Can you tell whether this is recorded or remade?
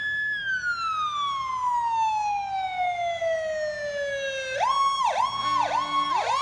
recorded